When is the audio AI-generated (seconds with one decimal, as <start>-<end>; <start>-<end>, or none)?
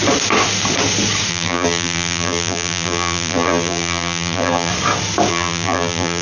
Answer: 1.3-4.7; 5.3-6.2